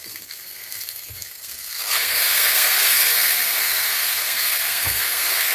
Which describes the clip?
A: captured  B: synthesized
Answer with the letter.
B